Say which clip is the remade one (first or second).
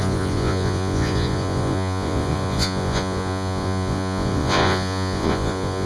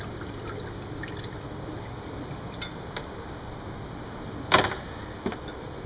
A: first